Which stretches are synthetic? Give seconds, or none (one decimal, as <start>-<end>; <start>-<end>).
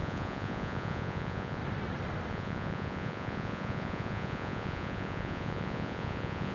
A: 0.0-1.6; 2.3-6.5